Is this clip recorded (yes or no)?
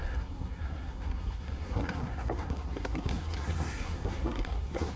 no